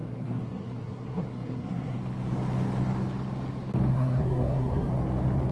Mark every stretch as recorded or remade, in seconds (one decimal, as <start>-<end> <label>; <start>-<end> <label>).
0.0-2.0 remade; 2.0-3.9 recorded; 3.9-4.9 remade; 4.9-5.5 recorded